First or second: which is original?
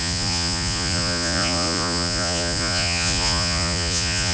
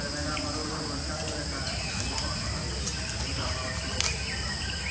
second